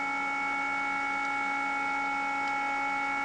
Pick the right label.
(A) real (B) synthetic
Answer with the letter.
A